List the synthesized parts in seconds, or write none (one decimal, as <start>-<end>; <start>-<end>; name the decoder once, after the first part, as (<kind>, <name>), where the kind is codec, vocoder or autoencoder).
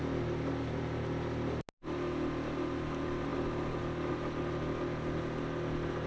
none